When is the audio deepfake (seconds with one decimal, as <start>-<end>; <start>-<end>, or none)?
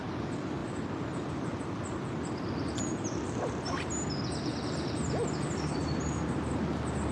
5.8-6.6